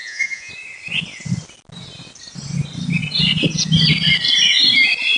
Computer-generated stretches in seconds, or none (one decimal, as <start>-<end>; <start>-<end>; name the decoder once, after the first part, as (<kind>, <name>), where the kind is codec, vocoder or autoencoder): 0.0-0.5 (vocoder, Vocos)